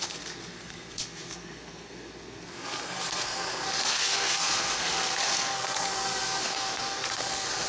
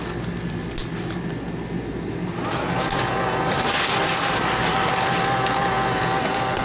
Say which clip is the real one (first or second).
second